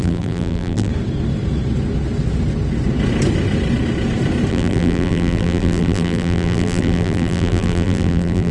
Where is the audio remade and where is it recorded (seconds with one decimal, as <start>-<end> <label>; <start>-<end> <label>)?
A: 0.0-0.9 remade; 0.9-4.5 recorded; 4.5-8.5 remade